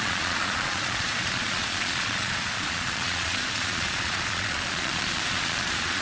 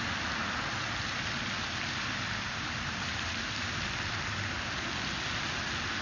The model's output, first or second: first